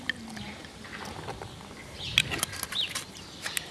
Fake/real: real